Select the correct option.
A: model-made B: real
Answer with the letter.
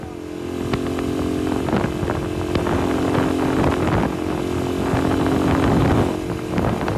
B